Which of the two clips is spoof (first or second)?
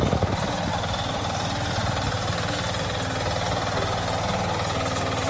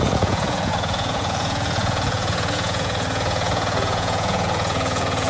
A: second